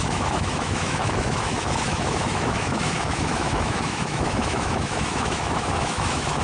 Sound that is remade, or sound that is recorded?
remade